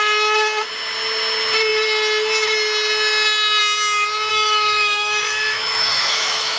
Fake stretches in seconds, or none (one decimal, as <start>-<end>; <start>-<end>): 4.3-6.6